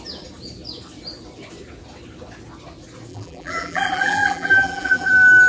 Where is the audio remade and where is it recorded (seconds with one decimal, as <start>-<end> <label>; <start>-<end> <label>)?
0.0-3.1 recorded; 3.1-5.1 remade; 5.1-5.5 recorded